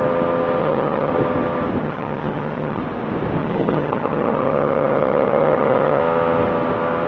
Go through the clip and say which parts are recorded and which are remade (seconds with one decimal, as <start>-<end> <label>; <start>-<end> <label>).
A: 0.0-0.6 recorded; 0.6-1.1 remade; 1.1-1.8 recorded; 1.8-2.8 remade; 2.8-3.4 recorded; 3.4-6.0 remade; 6.0-7.1 recorded